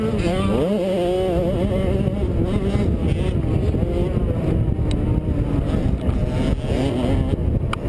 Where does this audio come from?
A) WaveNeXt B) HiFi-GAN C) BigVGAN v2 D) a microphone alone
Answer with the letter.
D